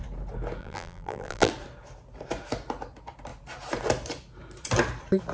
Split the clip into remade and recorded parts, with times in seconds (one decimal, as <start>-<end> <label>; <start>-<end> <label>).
0.0-0.6 recorded; 0.6-1.5 remade; 1.5-5.3 recorded